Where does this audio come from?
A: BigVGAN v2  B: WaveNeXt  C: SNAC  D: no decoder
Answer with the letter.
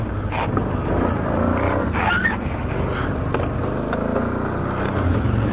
D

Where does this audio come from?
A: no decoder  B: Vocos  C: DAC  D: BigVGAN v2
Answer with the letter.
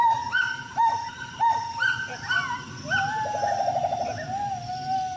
A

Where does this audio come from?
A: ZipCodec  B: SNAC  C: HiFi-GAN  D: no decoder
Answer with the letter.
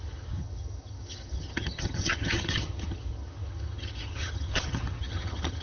C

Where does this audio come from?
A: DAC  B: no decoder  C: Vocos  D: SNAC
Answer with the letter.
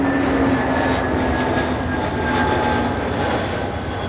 B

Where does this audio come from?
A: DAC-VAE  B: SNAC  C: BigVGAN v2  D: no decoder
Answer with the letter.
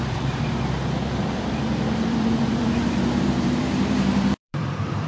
C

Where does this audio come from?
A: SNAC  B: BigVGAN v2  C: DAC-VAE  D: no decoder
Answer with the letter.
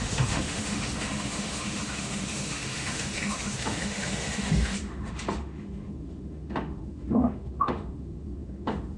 C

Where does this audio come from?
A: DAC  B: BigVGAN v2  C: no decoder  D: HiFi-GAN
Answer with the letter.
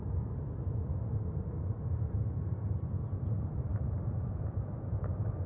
B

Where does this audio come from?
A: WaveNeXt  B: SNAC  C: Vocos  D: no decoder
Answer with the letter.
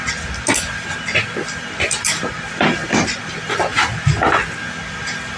D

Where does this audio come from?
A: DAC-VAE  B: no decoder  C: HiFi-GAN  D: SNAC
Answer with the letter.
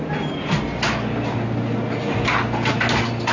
B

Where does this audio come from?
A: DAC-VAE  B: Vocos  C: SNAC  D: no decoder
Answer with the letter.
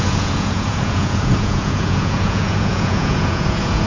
B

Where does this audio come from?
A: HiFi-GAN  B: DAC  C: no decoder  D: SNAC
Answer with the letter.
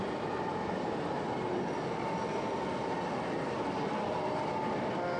C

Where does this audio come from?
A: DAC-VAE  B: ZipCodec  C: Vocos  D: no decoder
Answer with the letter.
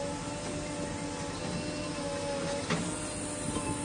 D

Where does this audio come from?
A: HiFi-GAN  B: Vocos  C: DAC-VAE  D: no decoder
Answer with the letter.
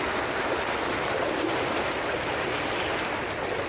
D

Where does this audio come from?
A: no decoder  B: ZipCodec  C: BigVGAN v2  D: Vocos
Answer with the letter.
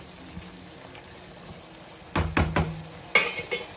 A